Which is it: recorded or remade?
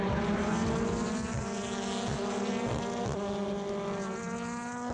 recorded